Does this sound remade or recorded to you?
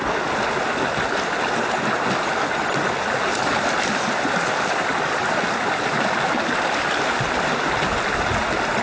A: recorded